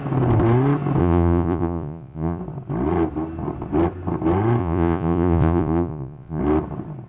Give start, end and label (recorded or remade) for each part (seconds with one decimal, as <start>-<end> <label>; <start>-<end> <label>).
0.0-1.0 recorded; 1.0-2.4 remade; 2.4-4.6 recorded; 4.6-6.4 remade; 6.4-7.1 recorded